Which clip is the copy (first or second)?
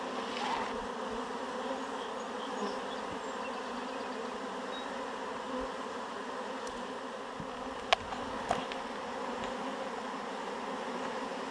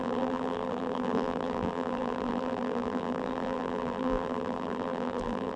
second